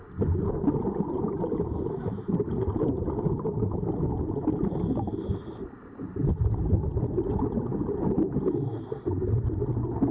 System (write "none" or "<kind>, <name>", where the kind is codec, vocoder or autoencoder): none